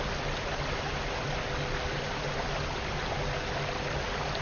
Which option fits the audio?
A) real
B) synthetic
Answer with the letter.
A